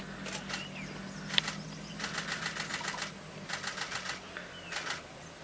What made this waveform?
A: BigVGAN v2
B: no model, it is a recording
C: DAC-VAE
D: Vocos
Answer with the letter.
B